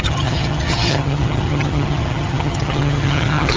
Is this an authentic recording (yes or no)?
no